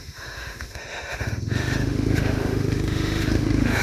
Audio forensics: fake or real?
fake